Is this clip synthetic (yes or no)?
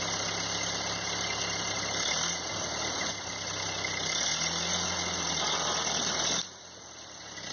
no